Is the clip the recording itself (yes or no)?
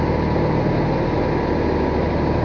yes